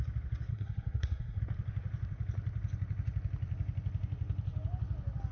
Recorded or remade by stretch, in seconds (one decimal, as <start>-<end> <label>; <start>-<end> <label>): 0.0-0.5 recorded; 0.5-1.4 remade; 1.4-5.3 recorded